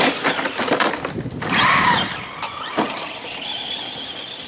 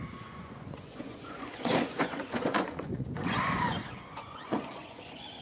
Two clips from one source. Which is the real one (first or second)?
first